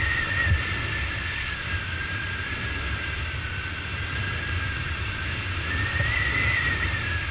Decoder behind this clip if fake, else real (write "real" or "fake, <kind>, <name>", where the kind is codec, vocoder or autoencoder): real